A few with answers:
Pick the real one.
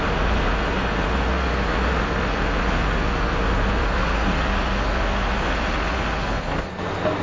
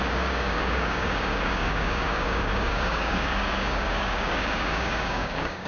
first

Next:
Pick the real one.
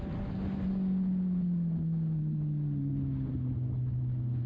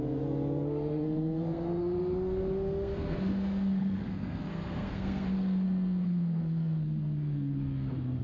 first